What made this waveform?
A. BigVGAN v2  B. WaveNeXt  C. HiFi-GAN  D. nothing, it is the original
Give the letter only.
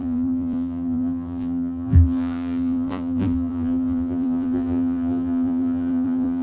A